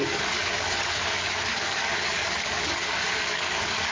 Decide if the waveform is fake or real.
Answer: fake